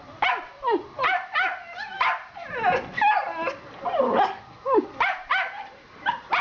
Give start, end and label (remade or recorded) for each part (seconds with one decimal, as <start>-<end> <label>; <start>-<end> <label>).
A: 0.0-1.1 remade; 1.1-4.9 recorded; 4.9-6.4 remade